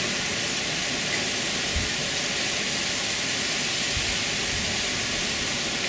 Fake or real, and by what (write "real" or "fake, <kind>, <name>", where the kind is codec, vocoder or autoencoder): real